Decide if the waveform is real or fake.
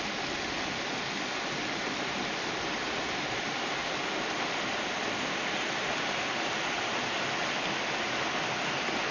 real